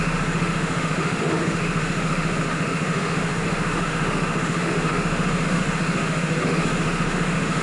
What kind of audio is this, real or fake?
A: fake